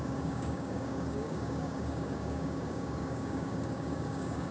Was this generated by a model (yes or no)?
yes